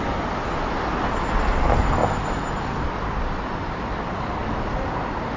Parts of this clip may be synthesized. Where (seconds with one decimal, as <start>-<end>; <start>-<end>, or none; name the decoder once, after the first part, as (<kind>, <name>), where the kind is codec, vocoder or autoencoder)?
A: none